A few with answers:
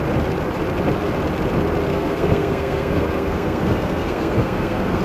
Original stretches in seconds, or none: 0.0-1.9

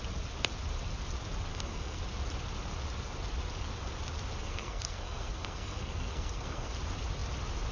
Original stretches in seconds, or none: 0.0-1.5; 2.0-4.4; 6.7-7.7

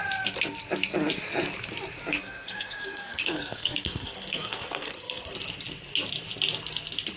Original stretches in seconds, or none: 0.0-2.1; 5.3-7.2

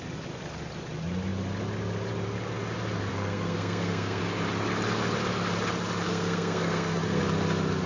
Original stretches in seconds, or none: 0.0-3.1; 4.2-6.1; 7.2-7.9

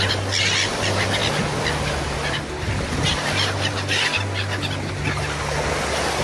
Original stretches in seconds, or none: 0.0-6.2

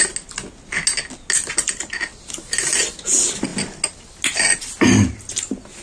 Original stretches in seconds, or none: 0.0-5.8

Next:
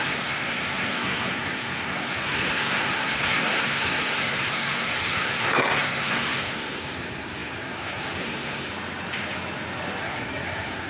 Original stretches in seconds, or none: 8.7-10.0

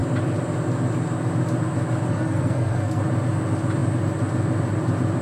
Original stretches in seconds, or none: 0.0-2.1; 3.0-5.2